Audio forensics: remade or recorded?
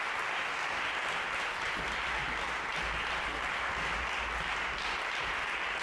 recorded